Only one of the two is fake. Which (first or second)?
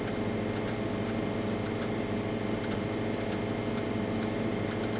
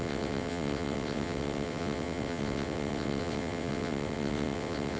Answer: second